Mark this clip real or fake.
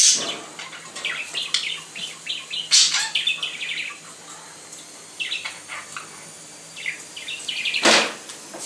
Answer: real